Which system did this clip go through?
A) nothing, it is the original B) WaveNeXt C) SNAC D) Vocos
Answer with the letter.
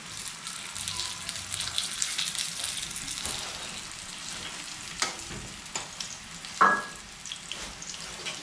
A